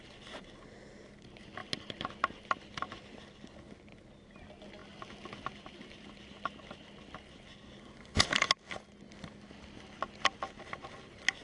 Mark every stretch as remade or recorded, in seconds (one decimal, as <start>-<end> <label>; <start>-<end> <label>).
0.0-11.4 recorded